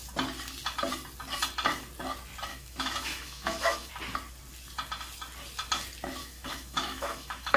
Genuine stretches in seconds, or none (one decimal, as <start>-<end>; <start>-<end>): 0.0-2.5; 3.9-6.2